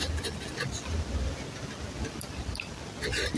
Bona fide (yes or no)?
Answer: yes